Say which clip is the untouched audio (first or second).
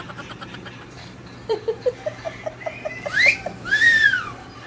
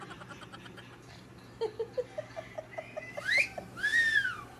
second